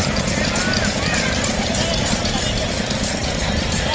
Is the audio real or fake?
real